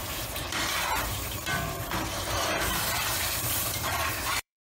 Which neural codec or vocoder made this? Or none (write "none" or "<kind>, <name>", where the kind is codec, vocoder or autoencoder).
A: vocoder, BigVGAN v2